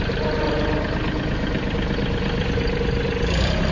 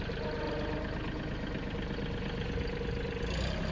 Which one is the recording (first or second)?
second